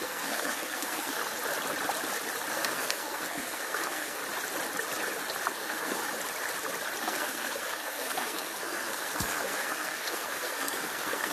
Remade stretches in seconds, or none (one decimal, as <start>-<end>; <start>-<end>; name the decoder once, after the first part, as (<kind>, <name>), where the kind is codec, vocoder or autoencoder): 0.0-1.2 (codec, SNAC); 2.5-4.2; 5.5-6.0; 7.0-11.3